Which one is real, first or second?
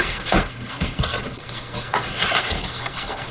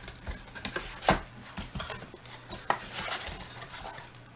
second